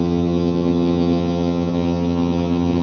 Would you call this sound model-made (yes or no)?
yes